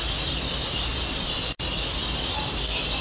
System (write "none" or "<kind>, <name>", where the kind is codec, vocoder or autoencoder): none